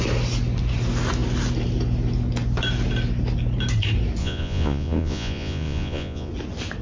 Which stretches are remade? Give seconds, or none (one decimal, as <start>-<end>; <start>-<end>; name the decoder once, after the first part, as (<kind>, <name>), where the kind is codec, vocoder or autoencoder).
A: 4.2-6.3 (vocoder, Vocos)